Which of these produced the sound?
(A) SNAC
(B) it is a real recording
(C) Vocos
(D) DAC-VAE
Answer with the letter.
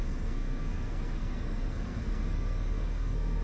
A